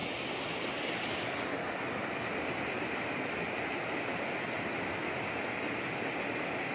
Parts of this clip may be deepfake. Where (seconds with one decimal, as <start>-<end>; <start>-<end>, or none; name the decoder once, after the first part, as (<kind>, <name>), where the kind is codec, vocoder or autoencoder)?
none